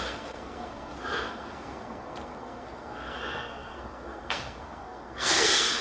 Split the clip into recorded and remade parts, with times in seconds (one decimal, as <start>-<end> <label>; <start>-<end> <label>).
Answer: 0.0-5.8 remade